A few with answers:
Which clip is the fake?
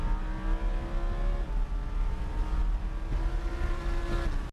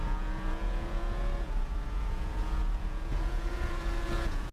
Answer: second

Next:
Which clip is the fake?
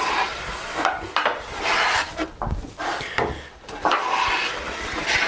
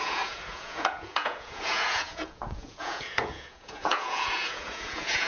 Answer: second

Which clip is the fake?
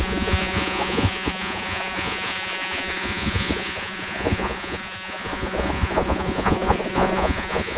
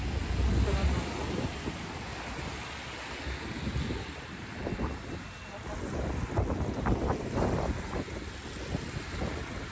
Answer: first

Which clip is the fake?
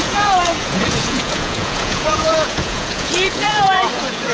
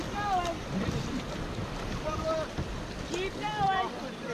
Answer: first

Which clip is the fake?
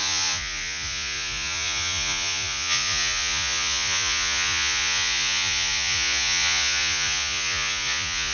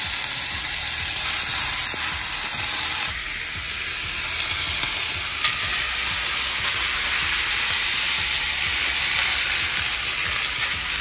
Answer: first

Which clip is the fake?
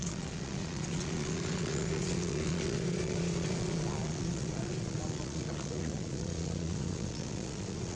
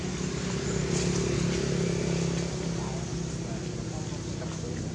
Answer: first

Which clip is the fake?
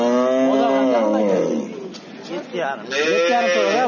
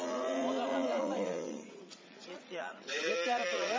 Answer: second